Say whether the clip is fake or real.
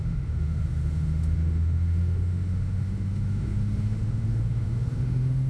fake